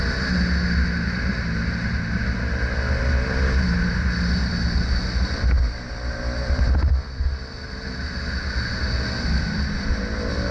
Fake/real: real